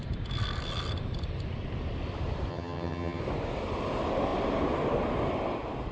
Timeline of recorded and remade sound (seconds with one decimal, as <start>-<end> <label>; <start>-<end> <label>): 0.0-2.5 recorded; 2.5-3.2 remade; 3.2-5.9 recorded